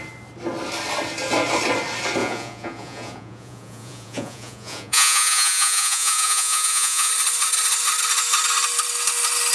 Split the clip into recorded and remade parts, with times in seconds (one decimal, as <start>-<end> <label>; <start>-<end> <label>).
0.0-2.2 recorded; 2.2-7.1 remade; 7.1-9.5 recorded